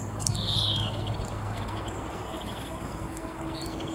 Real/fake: fake